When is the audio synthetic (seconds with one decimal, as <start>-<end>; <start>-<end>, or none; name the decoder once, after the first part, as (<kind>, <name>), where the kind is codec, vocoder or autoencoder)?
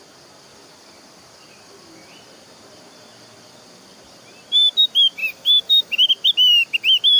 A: 5.2-6.1 (autoencoder, DAC-VAE)